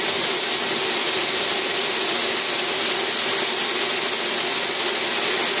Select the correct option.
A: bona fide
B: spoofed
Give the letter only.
A